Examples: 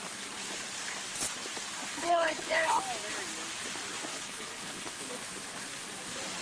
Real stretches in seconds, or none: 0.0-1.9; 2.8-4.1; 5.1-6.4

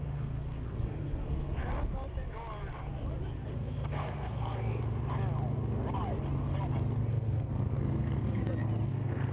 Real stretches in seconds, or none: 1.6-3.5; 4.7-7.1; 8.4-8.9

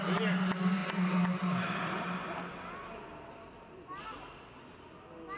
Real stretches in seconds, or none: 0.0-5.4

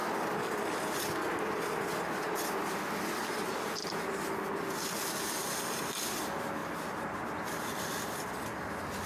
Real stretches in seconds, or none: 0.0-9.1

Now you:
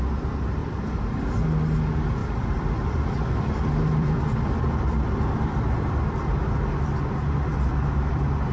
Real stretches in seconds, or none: 0.0-0.6; 1.2-2.2; 5.9-7.5

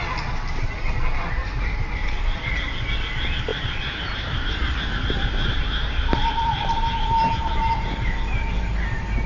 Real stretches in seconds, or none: 0.0-1.4; 2.4-3.5; 8.2-9.3

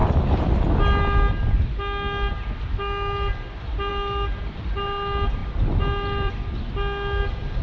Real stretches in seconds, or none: 0.0-5.4; 6.3-7.6

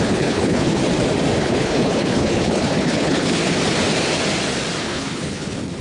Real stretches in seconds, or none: 0.8-1.4; 3.4-4.8